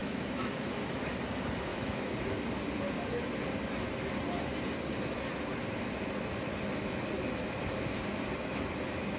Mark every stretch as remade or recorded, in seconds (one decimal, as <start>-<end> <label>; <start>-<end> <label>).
0.0-1.0 remade; 1.0-1.7 recorded; 1.7-2.2 remade; 2.2-9.2 recorded